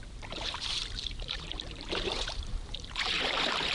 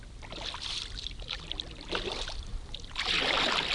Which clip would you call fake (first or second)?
first